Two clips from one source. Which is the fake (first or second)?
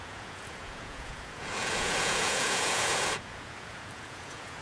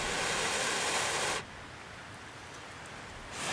first